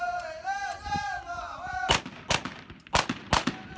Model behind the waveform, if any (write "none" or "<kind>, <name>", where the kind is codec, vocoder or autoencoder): none